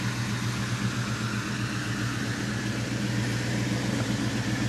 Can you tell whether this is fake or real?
real